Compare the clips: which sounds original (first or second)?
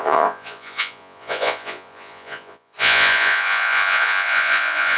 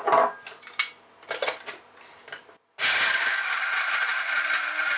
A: second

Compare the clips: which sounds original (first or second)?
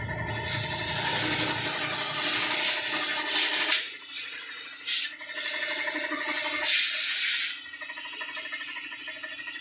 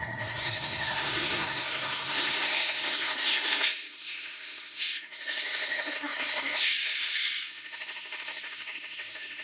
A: first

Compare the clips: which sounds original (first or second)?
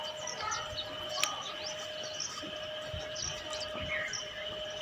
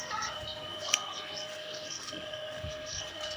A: first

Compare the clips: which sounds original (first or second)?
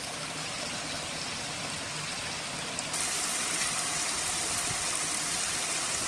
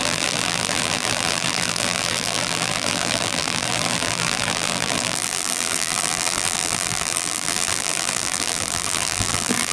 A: first